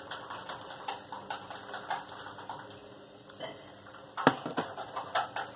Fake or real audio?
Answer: real